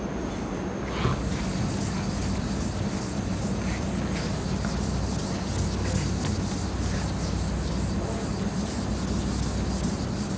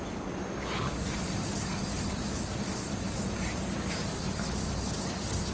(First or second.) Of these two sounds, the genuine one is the first